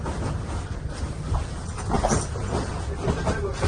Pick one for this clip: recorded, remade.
recorded